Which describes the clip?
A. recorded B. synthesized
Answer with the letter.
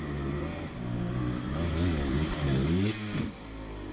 A